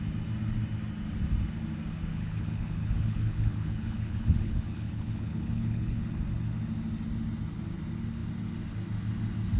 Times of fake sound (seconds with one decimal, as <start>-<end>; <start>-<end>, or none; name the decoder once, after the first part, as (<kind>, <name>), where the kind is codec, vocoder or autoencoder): 2.1-6.0 (codec, HILCodec)